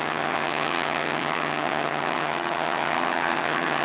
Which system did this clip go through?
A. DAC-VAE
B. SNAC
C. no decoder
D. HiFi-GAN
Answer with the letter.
D